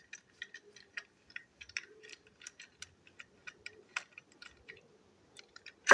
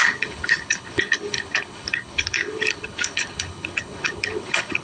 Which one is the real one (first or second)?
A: first